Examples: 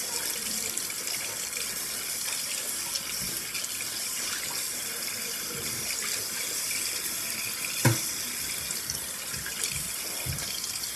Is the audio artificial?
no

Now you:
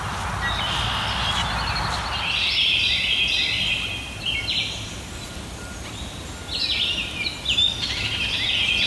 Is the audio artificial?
no